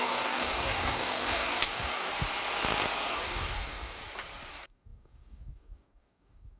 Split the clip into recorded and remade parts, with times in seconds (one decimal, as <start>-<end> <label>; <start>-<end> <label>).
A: 0.0-2.1 remade; 2.1-3.1 recorded; 3.1-4.0 remade; 4.0-4.5 recorded; 4.5-6.6 remade